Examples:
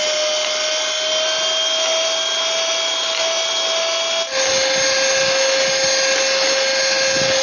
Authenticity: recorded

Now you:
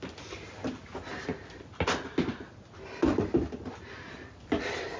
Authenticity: recorded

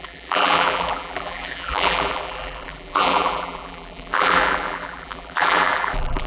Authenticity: remade